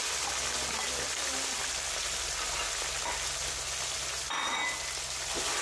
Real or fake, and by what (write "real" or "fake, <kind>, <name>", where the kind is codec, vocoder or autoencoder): real